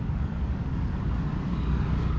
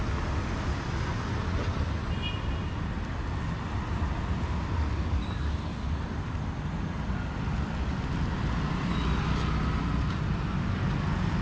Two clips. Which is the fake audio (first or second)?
first